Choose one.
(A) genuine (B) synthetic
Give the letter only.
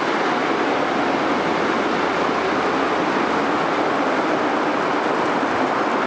A